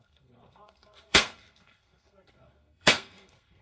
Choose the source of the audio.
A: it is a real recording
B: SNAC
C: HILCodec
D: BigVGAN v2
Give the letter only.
B